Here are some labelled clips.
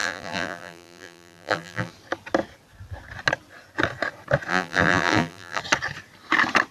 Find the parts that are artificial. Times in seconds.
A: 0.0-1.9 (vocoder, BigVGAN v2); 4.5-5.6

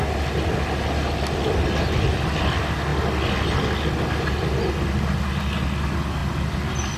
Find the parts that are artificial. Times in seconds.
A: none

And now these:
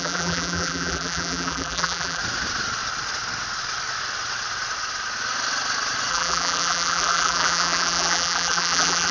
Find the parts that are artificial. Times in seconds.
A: 0.0-2.2 (vocoder, BigVGAN v2); 6.1-9.1

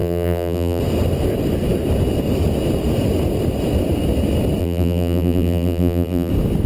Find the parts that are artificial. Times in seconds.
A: 0.0-0.8 (vocoder, BigVGAN v2); 4.6-6.3

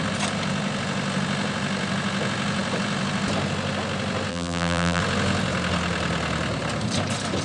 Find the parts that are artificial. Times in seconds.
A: 4.3-5.0 (vocoder, BigVGAN v2)

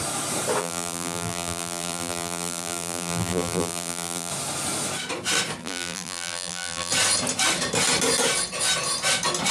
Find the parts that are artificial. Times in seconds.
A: 0.6-4.3 (vocoder, BigVGAN v2); 5.6-6.9

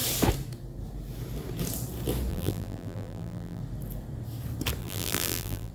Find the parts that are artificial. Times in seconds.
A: 2.3-3.6 (vocoder, BigVGAN v2); 4.8-5.7

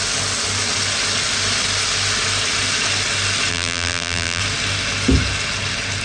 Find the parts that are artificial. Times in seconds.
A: 3.5-4.4 (vocoder, BigVGAN v2)